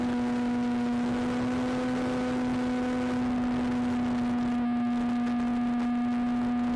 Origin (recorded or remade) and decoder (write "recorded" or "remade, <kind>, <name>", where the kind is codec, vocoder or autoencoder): recorded